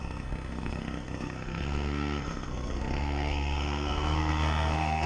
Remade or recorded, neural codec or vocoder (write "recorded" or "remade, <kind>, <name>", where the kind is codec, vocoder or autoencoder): remade, codec, SNAC